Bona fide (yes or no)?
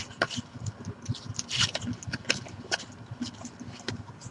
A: yes